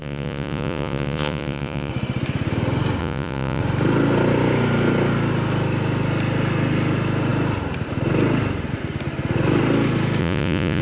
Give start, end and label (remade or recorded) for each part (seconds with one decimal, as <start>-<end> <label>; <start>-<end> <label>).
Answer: 0.0-1.9 remade; 1.9-3.0 recorded; 3.0-3.6 remade; 3.6-10.2 recorded; 10.2-10.8 remade